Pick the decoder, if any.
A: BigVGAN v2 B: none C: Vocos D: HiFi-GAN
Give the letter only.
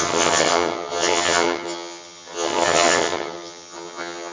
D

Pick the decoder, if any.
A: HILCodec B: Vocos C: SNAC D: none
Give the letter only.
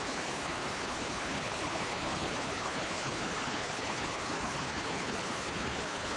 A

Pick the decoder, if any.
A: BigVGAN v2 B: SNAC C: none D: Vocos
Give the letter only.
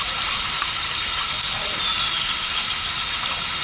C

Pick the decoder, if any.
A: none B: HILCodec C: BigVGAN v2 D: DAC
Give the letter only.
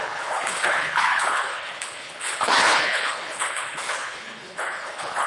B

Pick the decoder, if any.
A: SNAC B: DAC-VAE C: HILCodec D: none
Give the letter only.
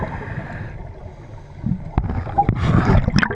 D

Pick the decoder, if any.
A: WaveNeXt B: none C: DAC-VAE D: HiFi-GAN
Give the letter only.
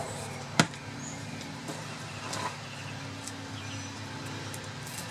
B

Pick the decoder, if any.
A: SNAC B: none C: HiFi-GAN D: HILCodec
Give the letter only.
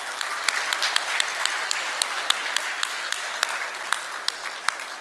B